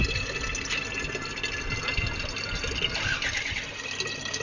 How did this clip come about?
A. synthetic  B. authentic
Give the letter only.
B